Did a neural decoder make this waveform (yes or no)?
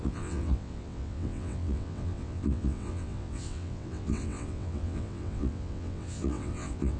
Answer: yes